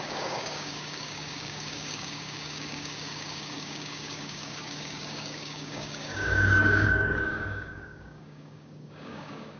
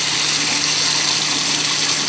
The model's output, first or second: first